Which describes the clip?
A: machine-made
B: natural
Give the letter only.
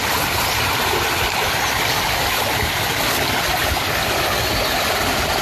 B